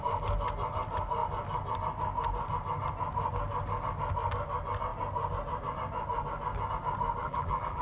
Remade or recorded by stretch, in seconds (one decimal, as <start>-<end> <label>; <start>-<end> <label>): 0.0-7.2 recorded; 7.2-7.8 remade